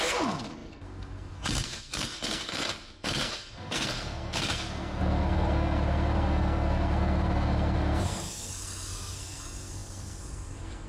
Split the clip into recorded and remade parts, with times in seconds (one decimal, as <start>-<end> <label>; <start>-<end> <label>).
0.0-10.9 remade